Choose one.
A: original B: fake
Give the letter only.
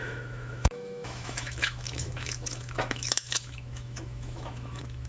B